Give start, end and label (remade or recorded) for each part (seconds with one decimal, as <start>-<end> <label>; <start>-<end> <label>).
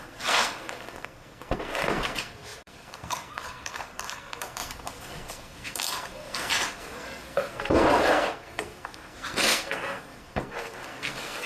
0.0-11.5 remade